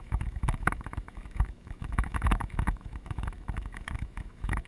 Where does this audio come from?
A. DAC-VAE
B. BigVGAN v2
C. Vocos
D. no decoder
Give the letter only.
A